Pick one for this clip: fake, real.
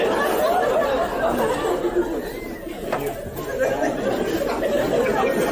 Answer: real